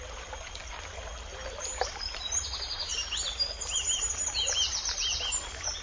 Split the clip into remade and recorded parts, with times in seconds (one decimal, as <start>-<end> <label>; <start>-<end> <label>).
0.0-5.8 recorded